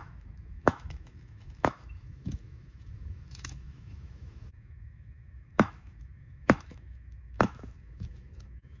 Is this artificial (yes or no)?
yes